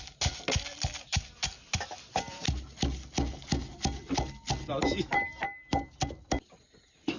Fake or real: real